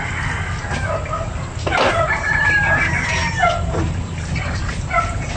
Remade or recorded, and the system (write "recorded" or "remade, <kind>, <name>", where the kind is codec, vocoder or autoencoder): recorded